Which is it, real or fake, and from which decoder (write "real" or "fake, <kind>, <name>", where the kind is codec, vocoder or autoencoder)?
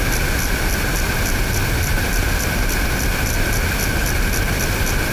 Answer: real